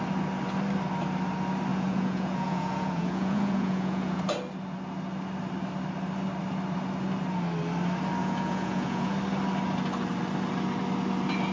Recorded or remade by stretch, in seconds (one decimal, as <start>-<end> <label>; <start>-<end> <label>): 0.0-1.7 recorded; 1.7-4.2 remade; 4.2-8.2 recorded; 8.2-9.1 remade; 9.1-11.5 recorded